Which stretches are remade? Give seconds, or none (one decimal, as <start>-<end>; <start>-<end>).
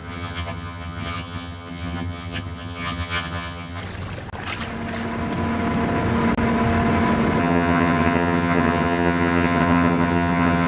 0.0-3.8; 7.4-10.7